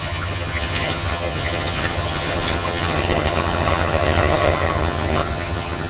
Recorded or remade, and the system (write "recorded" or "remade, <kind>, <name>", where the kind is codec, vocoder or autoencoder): remade, vocoder, HiFi-GAN